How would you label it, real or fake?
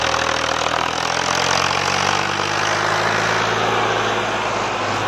real